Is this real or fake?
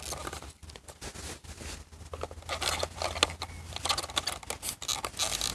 real